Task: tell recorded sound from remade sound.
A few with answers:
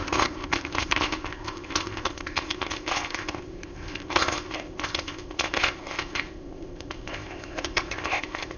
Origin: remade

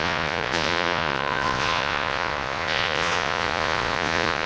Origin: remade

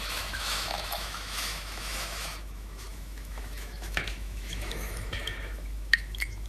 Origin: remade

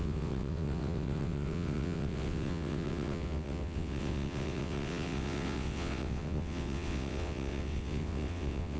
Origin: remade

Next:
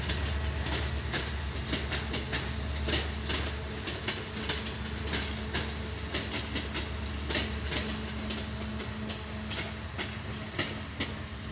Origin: recorded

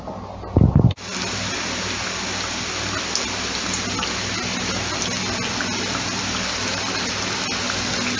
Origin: recorded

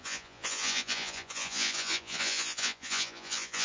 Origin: remade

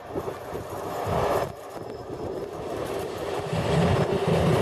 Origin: recorded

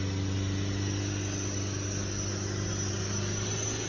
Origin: recorded